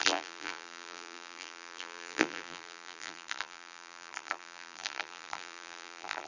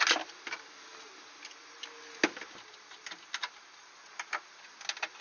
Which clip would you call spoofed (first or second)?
first